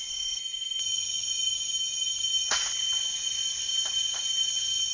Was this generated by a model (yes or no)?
no